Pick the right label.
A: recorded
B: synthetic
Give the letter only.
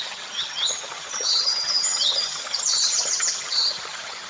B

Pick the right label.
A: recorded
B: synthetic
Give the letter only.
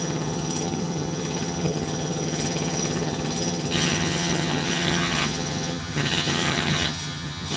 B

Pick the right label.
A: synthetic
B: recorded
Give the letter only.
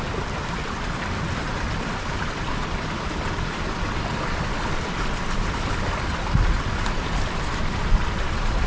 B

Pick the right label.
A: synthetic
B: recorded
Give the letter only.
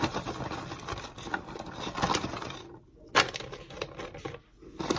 B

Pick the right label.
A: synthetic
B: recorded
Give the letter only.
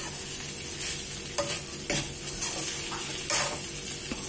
B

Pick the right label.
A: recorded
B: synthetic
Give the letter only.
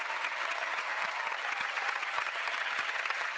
B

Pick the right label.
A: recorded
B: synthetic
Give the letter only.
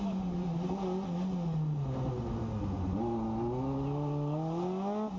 A